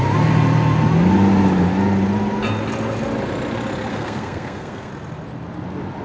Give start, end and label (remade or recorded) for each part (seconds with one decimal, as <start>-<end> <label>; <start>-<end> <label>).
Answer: 0.0-3.9 recorded; 3.9-4.9 remade; 4.9-6.0 recorded